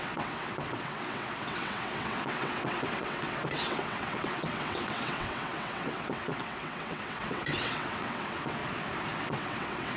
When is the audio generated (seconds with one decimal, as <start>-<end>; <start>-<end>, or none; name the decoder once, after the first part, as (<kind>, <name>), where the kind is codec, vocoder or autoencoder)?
0.0-8.6 (vocoder, WaveNeXt); 9.2-10.0